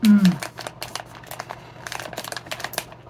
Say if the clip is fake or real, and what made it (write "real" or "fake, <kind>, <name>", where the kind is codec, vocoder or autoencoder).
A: real